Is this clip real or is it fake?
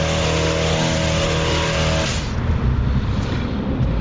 real